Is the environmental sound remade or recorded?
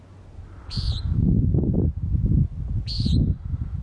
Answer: recorded